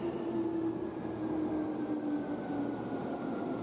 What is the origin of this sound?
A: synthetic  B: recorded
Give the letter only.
B